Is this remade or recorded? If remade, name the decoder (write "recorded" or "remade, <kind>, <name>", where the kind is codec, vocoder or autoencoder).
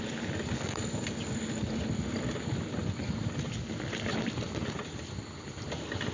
recorded